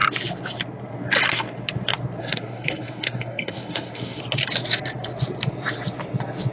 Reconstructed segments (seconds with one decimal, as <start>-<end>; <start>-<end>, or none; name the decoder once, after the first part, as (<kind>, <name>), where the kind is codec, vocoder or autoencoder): 2.2-4.2 (codec, SNAC)